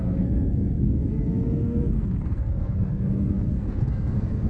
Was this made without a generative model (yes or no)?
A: no